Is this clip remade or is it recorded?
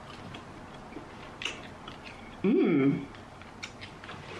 recorded